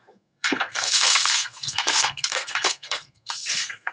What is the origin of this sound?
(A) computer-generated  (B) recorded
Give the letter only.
A